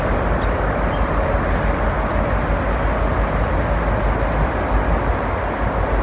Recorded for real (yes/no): yes